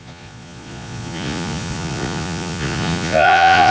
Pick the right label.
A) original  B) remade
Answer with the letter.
B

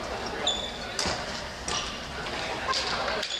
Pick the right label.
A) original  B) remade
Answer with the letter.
A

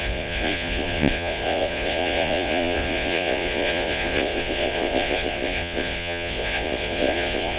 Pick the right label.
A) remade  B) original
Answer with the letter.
A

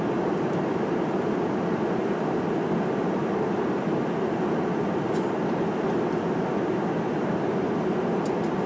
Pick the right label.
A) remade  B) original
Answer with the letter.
B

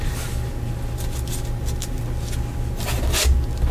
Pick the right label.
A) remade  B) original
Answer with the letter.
B